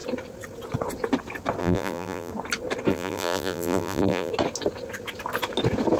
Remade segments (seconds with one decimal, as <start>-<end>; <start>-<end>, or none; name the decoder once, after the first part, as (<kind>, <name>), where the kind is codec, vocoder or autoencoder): 1.6-2.3 (vocoder, BigVGAN v2); 2.9-4.3